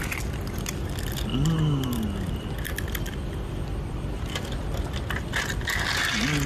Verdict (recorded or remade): recorded